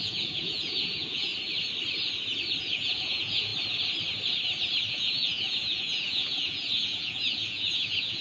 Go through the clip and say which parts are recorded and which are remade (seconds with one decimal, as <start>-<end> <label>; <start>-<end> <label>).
0.0-1.3 remade; 1.3-2.6 recorded; 2.6-3.5 remade; 3.5-4.9 recorded; 4.9-8.2 remade